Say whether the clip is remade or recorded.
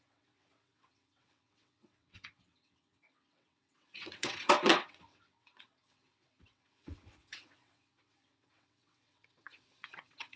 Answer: remade